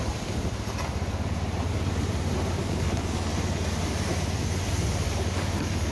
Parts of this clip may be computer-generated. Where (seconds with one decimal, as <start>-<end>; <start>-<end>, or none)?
2.6-3.3; 5.1-5.9